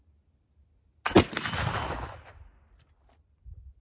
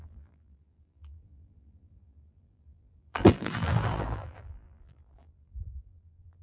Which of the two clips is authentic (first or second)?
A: first